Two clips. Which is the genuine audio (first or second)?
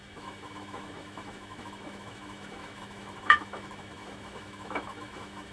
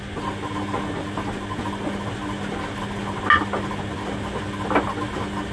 second